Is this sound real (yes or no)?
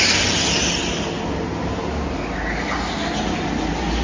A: yes